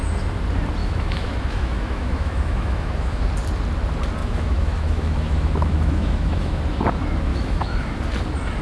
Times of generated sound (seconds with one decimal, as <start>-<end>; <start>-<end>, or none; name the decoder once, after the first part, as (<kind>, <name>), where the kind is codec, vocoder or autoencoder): 0.8-3.3 (autoencoder, DAC-VAE); 4.2-6.6; 7.3-8.0